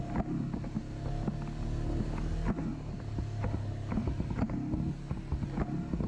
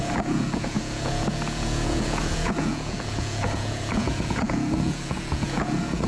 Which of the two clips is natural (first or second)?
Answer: first